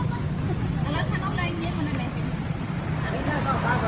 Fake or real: real